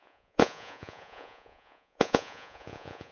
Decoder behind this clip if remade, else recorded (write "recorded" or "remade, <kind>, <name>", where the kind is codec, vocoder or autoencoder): remade, vocoder, Vocos